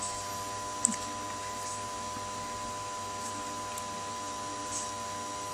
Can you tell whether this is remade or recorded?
recorded